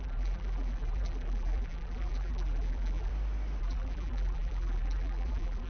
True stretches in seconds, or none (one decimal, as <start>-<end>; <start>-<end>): 3.1-3.6